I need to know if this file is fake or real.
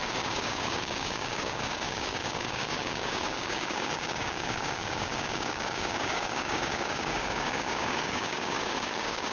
fake